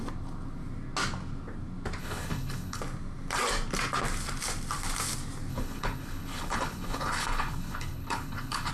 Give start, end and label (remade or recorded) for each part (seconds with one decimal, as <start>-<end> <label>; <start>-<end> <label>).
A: 0.0-2.0 recorded; 2.0-2.8 remade; 2.8-5.5 recorded; 5.5-8.7 remade